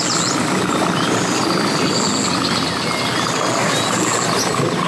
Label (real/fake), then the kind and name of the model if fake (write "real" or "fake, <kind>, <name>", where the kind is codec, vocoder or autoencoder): real